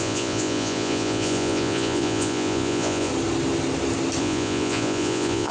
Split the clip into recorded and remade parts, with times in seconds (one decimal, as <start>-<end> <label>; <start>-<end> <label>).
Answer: 0.0-3.1 remade; 3.1-4.2 recorded; 4.2-5.5 remade